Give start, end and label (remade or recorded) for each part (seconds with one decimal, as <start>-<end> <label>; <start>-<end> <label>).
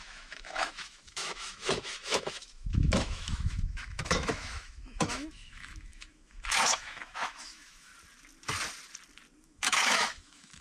0.0-7.9 remade; 7.9-9.4 recorded; 9.4-10.6 remade